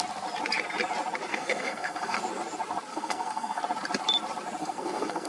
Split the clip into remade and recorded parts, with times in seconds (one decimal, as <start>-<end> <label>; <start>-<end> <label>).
0.0-1.3 recorded; 1.3-2.2 remade; 2.2-2.9 recorded; 2.9-3.6 remade; 3.6-4.6 recorded; 4.6-5.3 remade